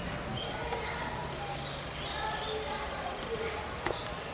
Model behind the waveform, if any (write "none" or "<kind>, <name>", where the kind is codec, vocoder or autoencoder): none